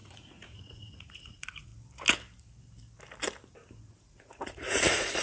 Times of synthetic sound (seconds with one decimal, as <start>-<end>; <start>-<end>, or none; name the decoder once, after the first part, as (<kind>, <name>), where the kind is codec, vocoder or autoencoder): 0.0-1.7 (vocoder, Vocos); 3.9-5.2